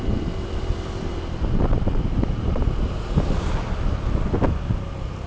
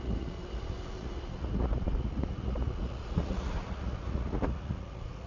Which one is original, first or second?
first